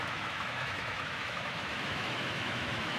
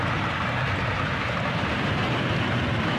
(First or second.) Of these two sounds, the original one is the second